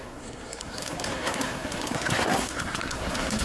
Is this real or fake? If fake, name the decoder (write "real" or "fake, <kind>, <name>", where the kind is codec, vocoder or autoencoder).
fake, codec, SNAC